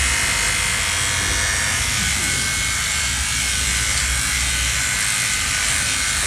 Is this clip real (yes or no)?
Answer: yes